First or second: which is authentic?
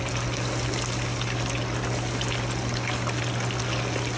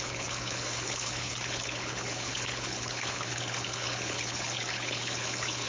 first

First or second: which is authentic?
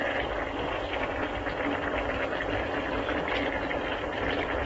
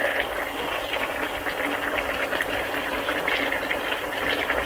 second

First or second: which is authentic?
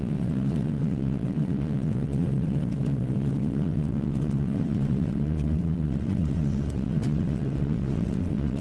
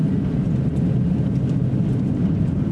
second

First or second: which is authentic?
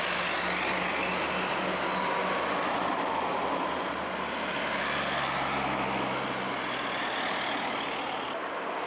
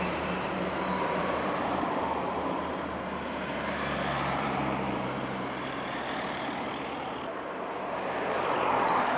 first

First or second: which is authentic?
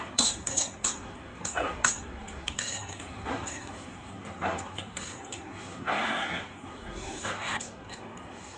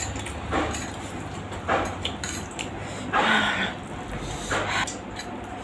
second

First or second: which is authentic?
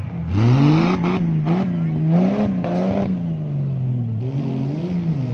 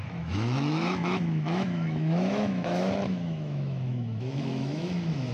first